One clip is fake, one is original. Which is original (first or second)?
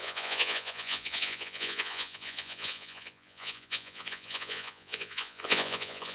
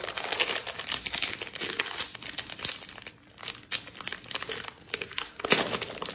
second